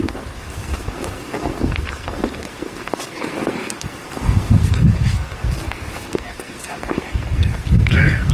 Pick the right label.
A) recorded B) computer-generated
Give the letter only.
B